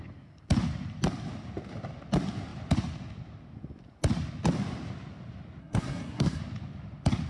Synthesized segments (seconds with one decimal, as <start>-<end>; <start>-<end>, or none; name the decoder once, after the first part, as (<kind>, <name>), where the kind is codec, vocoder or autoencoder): 5.6-6.4 (codec, SNAC)